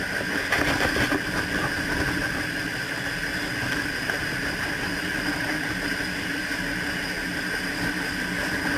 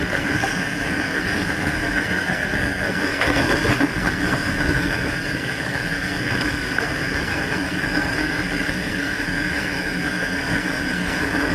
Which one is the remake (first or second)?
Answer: second